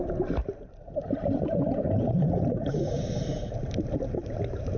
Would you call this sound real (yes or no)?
no